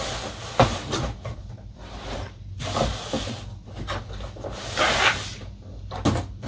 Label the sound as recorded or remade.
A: recorded